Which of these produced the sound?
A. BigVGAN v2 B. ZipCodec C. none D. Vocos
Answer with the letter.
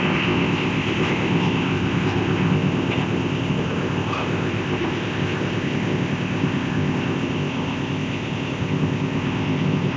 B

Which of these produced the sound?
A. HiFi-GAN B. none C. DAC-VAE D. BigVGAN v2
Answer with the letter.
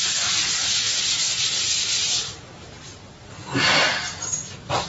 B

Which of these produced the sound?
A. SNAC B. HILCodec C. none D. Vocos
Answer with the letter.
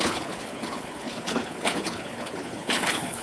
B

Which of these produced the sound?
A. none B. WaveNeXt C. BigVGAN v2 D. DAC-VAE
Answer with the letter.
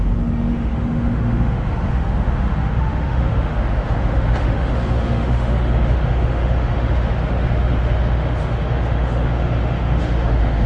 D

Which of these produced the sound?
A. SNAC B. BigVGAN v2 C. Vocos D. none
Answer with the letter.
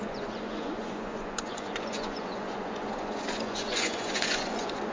C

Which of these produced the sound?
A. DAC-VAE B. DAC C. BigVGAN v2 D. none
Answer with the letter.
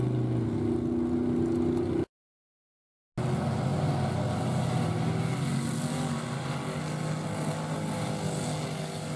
D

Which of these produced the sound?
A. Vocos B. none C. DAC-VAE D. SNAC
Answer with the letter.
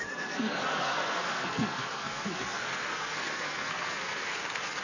D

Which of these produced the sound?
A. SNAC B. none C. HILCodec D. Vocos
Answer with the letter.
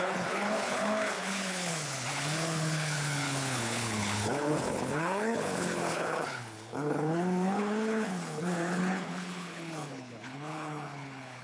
C